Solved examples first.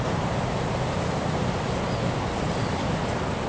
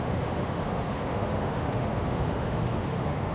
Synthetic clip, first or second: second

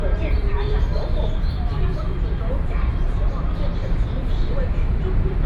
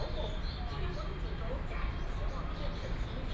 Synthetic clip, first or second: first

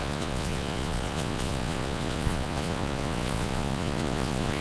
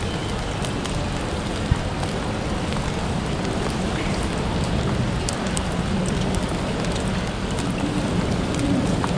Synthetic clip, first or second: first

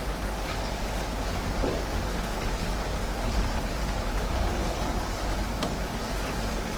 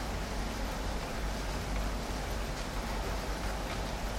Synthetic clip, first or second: first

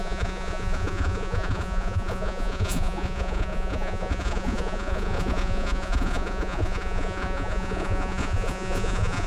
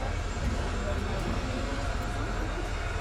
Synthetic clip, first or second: first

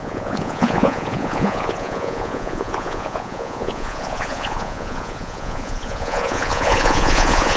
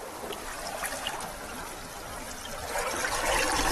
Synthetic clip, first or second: first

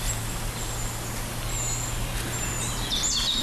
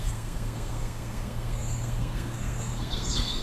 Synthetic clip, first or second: second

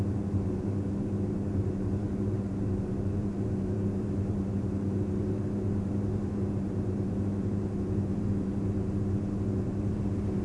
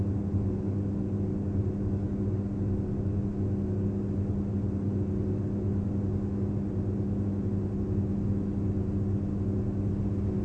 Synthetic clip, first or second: first